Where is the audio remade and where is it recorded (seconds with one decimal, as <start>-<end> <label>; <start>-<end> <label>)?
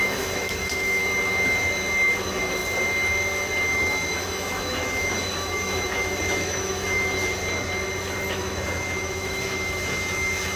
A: 0.0-1.0 remade; 1.0-2.2 recorded; 2.2-2.6 remade; 2.6-3.7 recorded; 3.7-7.2 remade; 7.2-8.3 recorded; 8.3-10.6 remade